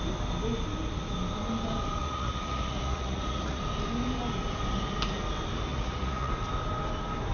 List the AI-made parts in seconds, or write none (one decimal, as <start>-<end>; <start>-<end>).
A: 2.0-3.6; 5.7-6.3